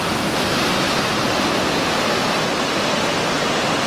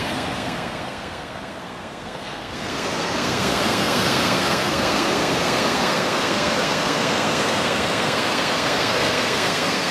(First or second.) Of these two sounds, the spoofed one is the second